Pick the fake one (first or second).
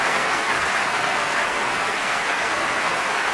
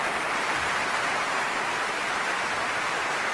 first